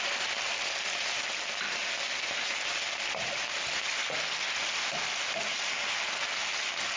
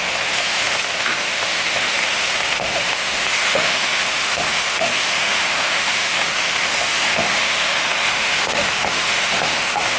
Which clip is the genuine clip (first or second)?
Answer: first